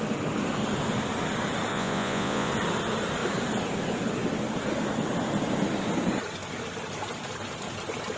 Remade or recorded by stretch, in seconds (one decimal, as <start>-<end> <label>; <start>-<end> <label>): 0.0-1.7 recorded; 1.7-2.5 remade; 2.5-8.2 recorded